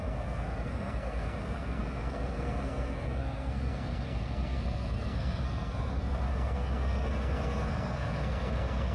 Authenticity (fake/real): fake